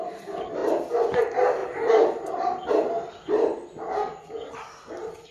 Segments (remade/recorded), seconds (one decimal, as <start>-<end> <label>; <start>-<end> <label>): 0.0-1.6 recorded; 1.6-2.7 remade; 2.7-5.3 recorded